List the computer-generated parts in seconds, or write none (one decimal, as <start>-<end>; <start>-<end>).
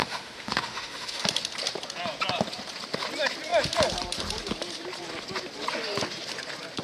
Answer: 0.0-1.2